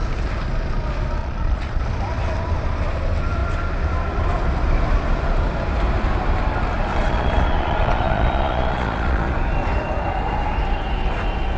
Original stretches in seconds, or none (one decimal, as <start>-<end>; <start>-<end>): 0.0-1.2; 1.8-6.9; 9.3-11.6